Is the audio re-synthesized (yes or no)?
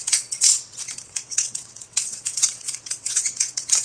yes